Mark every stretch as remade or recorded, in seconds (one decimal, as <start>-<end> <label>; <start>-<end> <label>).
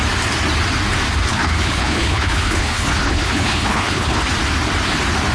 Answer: 0.0-1.3 recorded; 1.3-4.2 remade; 4.2-5.3 recorded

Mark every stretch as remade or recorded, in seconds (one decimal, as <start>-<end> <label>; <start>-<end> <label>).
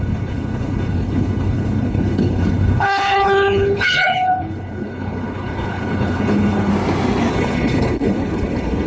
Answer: 0.0-6.7 remade; 6.7-7.3 recorded; 7.3-8.9 remade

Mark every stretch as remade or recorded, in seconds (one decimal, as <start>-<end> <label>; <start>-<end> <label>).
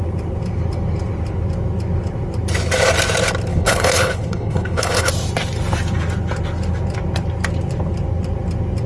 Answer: 0.0-3.5 recorded; 3.5-5.1 remade; 5.1-8.9 recorded